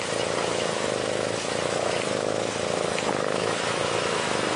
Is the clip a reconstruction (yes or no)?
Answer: yes